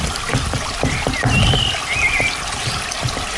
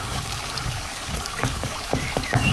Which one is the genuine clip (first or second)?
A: first